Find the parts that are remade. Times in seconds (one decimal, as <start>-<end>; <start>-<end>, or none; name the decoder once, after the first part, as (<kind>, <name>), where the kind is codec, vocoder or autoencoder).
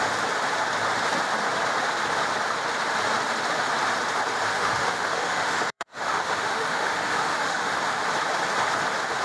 4.5-7.8 (autoencoder, DAC-VAE)